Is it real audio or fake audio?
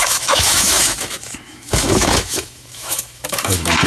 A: fake